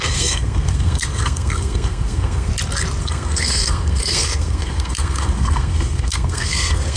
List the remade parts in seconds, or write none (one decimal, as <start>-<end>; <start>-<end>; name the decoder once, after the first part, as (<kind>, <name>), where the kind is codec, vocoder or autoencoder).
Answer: 0.0-2.5 (codec, SNAC); 3.0-7.0